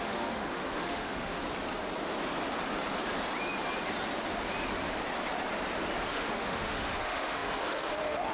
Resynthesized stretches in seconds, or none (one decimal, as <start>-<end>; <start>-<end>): 0.0-1.4; 6.1-8.3